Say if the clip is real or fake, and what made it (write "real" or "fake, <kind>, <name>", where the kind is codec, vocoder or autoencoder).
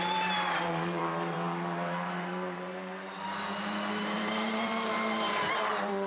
fake, vocoder, BigVGAN v2